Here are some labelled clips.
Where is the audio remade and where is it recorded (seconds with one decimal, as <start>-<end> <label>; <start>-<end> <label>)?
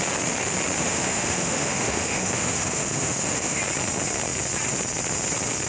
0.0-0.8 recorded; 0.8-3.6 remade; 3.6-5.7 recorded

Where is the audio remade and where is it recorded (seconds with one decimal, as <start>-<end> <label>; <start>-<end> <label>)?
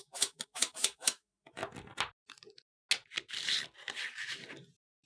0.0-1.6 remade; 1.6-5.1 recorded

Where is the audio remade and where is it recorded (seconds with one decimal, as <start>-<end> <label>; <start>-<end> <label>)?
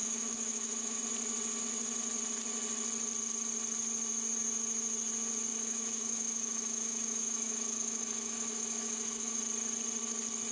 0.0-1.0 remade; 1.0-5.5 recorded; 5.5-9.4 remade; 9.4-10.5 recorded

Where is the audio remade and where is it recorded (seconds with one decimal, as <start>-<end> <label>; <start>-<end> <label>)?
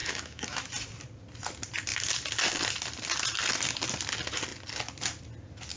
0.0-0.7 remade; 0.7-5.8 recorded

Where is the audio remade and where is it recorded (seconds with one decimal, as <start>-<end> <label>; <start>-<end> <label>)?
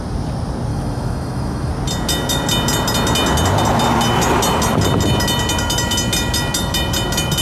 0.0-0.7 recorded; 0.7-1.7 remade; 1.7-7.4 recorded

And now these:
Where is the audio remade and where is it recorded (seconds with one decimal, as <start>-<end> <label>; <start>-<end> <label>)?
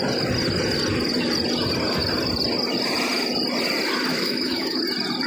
0.0-4.1 recorded; 4.1-4.8 remade; 4.8-5.3 recorded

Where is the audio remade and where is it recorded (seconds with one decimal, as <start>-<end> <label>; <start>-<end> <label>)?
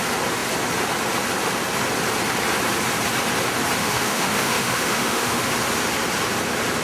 0.0-3.8 recorded; 3.8-5.5 remade; 5.5-6.8 recorded